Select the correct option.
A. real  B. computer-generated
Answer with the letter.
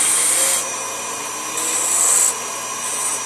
A